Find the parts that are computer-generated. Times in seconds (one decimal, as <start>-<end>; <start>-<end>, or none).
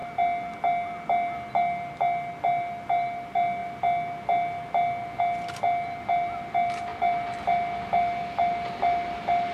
none